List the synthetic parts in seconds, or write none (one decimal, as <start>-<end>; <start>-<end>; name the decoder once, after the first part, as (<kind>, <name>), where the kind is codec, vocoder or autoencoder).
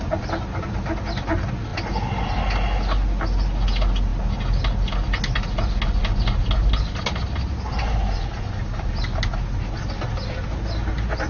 none